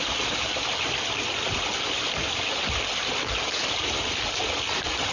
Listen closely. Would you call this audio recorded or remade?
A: recorded